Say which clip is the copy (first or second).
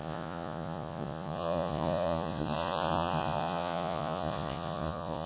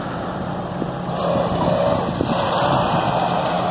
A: first